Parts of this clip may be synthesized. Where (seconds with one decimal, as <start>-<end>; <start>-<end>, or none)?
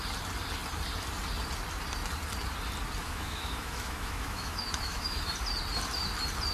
3.0-5.3